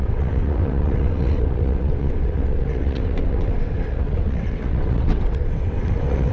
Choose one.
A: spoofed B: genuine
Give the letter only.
A